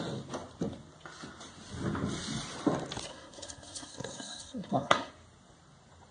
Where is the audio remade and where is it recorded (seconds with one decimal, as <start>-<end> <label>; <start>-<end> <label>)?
0.0-3.1 recorded; 3.1-5.1 remade; 5.1-6.1 recorded

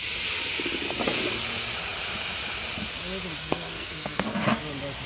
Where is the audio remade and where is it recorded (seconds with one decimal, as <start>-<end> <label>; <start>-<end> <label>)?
0.0-3.4 recorded; 3.4-4.6 remade; 4.6-5.1 recorded

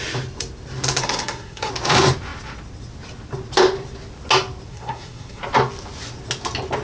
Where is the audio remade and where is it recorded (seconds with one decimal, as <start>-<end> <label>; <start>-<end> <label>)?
0.0-1.0 recorded; 1.0-1.7 remade; 1.7-4.7 recorded; 4.7-5.4 remade; 5.4-6.8 recorded

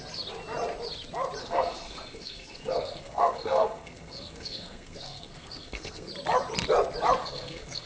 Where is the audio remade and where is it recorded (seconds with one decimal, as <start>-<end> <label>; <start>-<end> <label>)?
0.0-1.4 recorded; 1.4-6.1 remade; 6.1-7.2 recorded; 7.2-7.9 remade

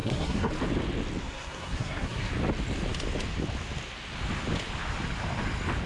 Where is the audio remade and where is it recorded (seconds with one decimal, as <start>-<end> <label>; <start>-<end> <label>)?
0.0-0.5 remade; 0.5-1.2 recorded; 1.2-2.3 remade; 2.3-5.9 recorded

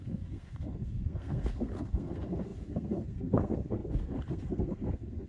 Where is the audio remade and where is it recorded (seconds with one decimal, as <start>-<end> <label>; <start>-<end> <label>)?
0.0-5.3 remade

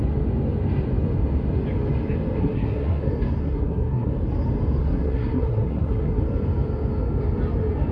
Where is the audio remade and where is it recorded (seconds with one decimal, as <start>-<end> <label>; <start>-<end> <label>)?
0.0-2.4 recorded; 2.4-3.0 remade; 3.0-3.4 recorded; 3.4-4.1 remade; 4.1-4.8 recorded; 4.8-6.2 remade; 6.2-7.9 recorded

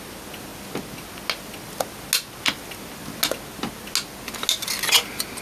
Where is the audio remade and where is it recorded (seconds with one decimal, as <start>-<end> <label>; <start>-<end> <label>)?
0.0-5.4 recorded